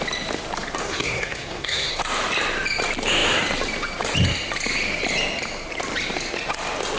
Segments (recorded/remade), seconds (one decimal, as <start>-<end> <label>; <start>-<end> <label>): 0.0-0.8 recorded; 0.8-2.0 remade; 2.0-7.0 recorded